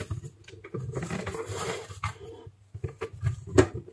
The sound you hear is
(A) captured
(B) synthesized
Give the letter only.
A